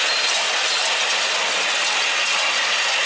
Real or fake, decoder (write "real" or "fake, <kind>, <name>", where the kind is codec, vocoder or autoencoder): real